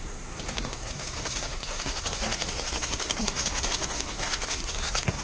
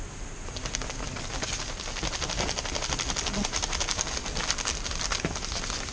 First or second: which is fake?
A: first